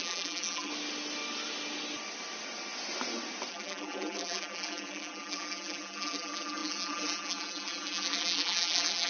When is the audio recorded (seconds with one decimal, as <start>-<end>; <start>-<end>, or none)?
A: 0.7-3.5